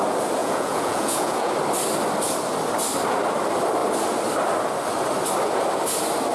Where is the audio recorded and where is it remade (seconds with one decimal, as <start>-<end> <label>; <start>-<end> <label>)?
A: 0.0-0.4 recorded; 0.4-1.5 remade; 1.5-6.3 recorded